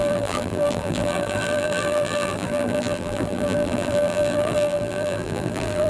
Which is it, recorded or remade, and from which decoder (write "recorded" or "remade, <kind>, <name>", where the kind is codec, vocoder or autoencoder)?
remade, vocoder, BigVGAN v2